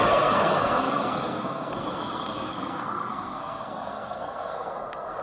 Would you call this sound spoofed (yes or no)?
yes